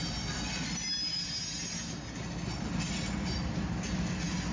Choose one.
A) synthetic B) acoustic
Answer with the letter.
B